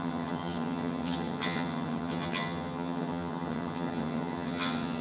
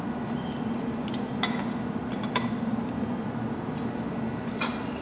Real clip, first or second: second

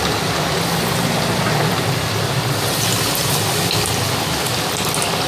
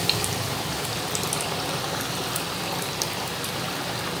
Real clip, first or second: first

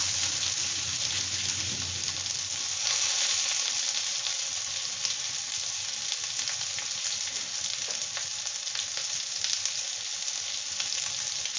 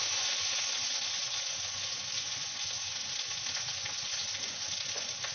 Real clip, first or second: first